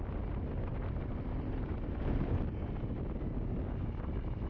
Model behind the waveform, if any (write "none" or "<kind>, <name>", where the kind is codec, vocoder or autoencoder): none